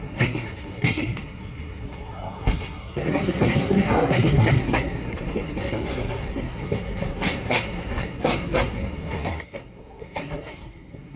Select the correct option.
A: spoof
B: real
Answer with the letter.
A